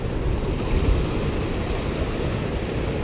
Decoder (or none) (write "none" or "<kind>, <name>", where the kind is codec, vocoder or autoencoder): none